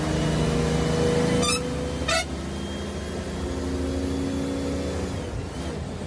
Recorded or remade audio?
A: recorded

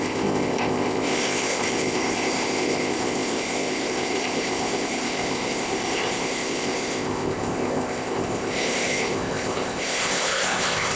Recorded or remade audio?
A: remade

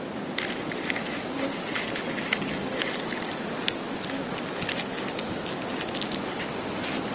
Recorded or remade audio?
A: recorded